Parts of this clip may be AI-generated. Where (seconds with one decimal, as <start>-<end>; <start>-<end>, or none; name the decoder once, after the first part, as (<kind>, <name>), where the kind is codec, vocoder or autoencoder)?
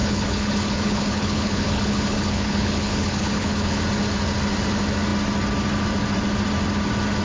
0.0-3.8 (codec, HILCodec)